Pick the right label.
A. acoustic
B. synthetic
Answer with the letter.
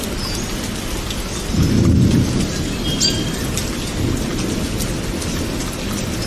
A